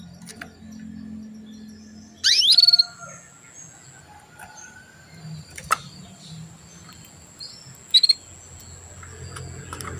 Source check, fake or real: real